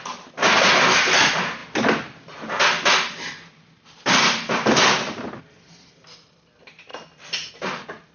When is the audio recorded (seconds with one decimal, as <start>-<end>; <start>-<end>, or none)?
0.0-8.1